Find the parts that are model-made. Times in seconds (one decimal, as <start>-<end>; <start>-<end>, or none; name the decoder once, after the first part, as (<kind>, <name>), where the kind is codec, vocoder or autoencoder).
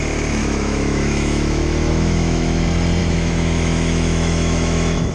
0.4-2.6 (autoencoder, DAC-VAE); 3.0-5.1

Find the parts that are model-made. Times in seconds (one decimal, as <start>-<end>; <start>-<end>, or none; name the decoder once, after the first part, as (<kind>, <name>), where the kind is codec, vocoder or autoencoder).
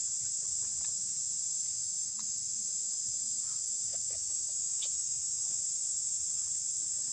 3.9-5.6 (autoencoder, DAC-VAE)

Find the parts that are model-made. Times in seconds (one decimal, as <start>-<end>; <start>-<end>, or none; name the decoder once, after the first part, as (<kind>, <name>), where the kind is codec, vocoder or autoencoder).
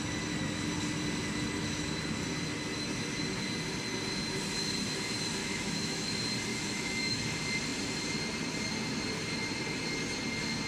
5.4-6.1 (autoencoder, DAC-VAE); 6.5-7.2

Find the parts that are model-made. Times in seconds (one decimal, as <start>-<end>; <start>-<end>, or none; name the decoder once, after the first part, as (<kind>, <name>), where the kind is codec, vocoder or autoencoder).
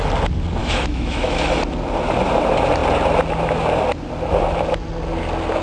0.6-1.6 (autoencoder, DAC-VAE)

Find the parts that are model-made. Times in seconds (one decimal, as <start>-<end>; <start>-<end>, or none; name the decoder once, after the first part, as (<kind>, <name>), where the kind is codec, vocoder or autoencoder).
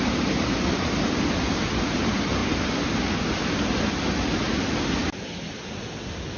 none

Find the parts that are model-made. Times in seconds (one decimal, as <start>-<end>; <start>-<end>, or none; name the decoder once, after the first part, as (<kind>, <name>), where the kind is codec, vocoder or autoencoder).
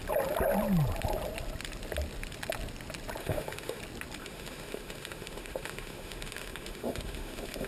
3.2-3.8 (autoencoder, DAC-VAE); 4.2-7.7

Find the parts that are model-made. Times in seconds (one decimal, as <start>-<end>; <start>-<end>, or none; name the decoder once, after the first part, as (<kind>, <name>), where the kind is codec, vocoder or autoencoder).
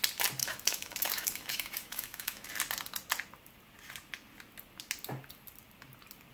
0.4-2.5 (autoencoder, DAC-VAE)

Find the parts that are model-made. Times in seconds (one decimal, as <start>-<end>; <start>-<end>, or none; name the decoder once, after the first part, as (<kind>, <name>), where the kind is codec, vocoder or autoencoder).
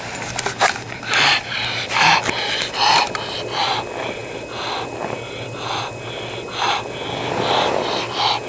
none